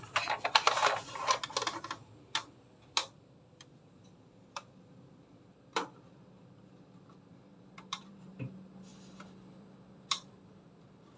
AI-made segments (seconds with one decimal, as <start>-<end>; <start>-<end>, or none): 3.0-8.2; 8.9-10.3